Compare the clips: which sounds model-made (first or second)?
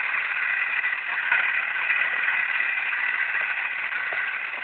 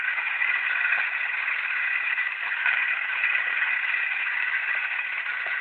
second